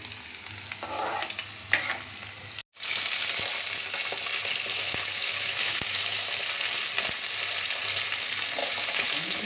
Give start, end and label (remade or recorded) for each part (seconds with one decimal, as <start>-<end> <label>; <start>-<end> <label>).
0.0-4.7 recorded; 4.7-6.4 remade; 6.4-8.6 recorded; 8.6-9.5 remade